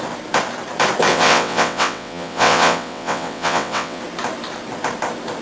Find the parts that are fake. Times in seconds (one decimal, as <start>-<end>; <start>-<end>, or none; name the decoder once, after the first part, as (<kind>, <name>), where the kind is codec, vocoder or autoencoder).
1.1-4.0 (vocoder, WaveNeXt)